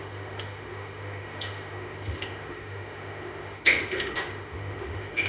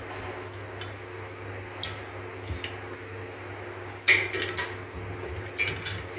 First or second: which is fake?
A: first